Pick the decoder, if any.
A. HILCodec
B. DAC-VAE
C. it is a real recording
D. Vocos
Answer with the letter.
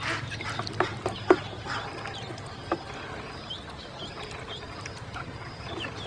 C